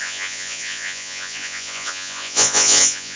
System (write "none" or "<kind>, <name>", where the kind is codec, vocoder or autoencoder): vocoder, Vocos